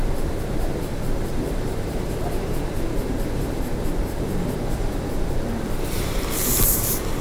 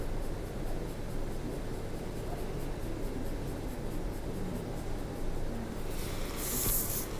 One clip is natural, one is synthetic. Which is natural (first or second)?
second